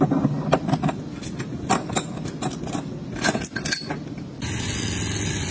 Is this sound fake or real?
real